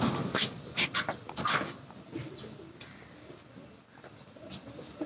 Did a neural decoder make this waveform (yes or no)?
no